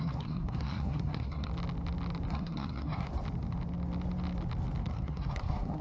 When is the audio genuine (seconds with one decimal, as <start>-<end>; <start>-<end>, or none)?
1.5-2.3; 3.1-4.8